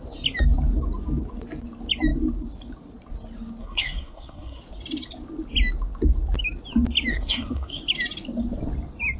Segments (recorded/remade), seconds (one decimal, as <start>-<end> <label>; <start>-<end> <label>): 0.0-3.6 recorded; 3.6-4.6 remade; 4.6-7.1 recorded; 7.1-7.8 remade; 7.8-9.2 recorded